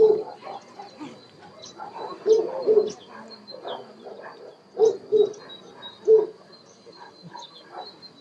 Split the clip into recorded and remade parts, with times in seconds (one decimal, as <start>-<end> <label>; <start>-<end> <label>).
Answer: 0.0-8.2 recorded